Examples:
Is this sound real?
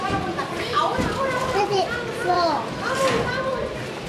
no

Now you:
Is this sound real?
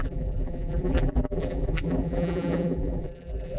no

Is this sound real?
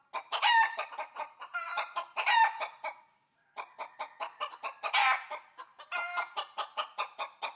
no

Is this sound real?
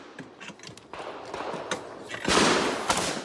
yes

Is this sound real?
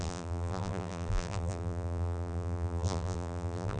no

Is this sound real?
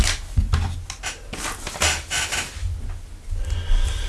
yes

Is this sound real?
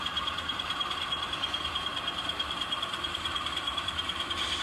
no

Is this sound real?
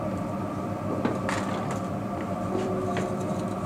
no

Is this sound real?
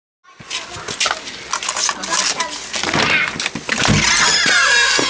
yes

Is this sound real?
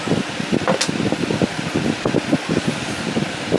yes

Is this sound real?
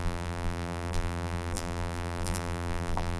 no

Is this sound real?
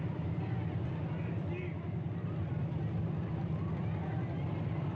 no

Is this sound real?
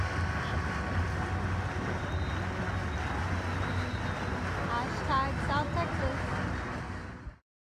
yes